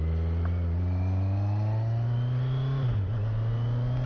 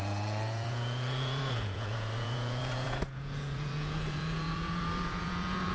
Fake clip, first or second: second